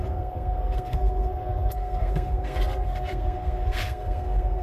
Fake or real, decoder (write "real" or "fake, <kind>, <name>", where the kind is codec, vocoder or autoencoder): fake, codec, SNAC